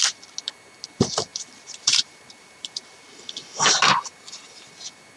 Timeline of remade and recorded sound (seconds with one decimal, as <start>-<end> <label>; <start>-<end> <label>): 0.0-1.3 recorded; 1.3-4.4 remade; 4.4-5.2 recorded